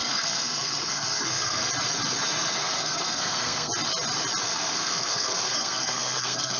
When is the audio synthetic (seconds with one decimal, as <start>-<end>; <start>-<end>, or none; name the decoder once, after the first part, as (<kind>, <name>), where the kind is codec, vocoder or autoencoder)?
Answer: 0.0-1.6 (codec, SNAC); 2.5-3.7; 4.4-6.6